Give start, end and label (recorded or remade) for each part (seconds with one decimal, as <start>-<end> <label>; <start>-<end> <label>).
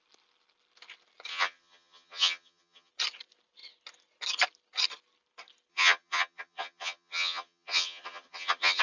0.0-1.3 recorded; 1.3-2.9 remade; 2.9-5.7 recorded; 5.7-8.8 remade